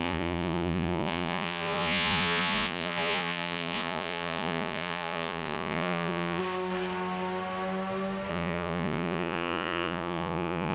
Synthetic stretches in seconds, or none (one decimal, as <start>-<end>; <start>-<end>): 0.0-6.4; 8.3-10.7